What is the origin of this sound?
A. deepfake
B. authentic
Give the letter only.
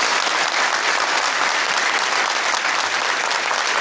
B